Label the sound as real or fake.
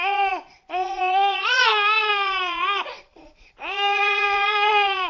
fake